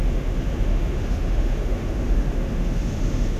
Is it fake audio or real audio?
fake